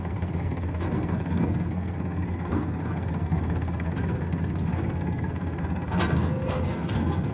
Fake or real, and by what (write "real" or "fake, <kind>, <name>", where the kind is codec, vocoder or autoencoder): fake, codec, SNAC